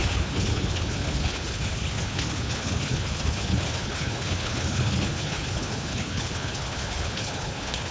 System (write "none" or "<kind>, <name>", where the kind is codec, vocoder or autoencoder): codec, HILCodec